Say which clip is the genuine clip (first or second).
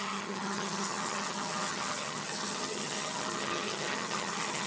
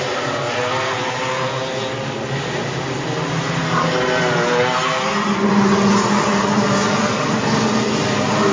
second